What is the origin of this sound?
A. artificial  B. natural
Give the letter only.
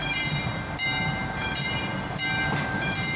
A